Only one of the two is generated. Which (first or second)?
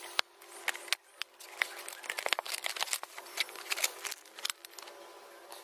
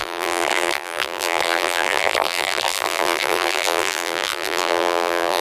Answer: second